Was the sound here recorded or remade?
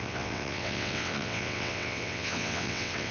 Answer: remade